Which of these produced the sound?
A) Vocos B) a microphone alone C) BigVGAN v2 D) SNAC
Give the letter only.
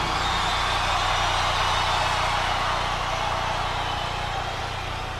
B